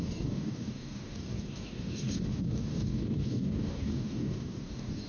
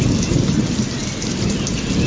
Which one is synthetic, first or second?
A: first